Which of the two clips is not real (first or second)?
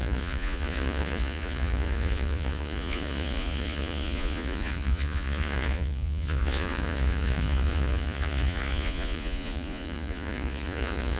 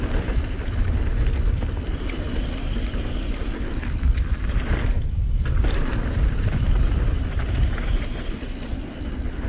first